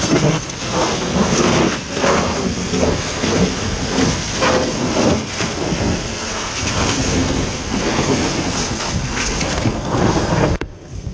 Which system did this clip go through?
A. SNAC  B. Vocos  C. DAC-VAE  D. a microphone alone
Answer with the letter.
A